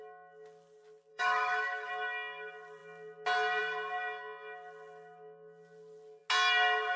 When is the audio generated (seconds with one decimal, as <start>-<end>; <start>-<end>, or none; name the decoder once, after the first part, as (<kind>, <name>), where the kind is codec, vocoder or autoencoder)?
1.1-1.9 (autoencoder, DAC-VAE)